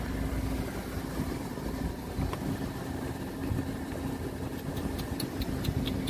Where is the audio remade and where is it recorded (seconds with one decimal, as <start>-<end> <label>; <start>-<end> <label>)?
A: 0.0-3.4 remade; 3.4-4.7 recorded; 4.7-6.1 remade